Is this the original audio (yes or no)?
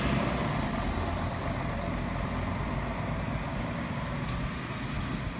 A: yes